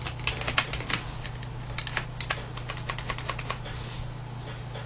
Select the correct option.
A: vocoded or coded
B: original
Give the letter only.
B